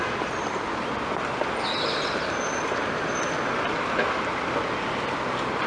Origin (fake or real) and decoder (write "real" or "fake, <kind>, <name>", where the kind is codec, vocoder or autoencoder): real